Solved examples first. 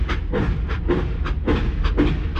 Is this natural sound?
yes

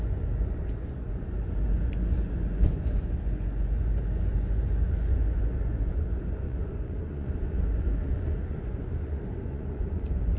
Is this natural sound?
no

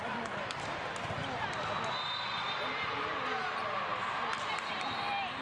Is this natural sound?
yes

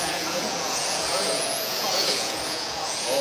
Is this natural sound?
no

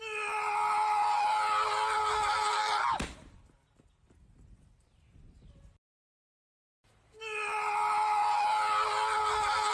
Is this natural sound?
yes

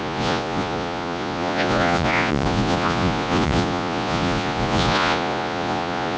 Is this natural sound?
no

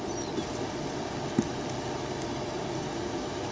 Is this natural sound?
yes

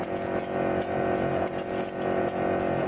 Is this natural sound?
no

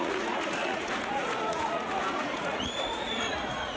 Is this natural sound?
no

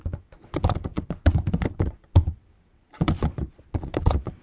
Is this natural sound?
no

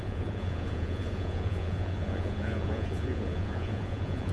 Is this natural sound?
no